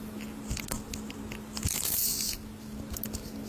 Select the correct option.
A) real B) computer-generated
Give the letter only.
A